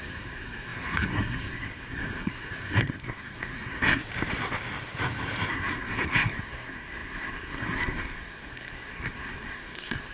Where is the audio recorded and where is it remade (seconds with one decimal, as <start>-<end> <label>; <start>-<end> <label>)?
0.0-4.0 remade; 4.0-5.5 recorded; 5.5-10.1 remade